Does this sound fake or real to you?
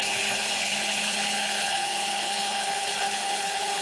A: fake